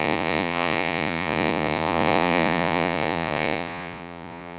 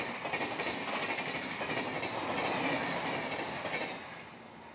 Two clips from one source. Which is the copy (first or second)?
first